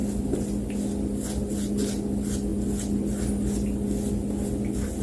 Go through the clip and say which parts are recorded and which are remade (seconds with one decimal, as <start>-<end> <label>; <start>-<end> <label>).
0.0-5.0 recorded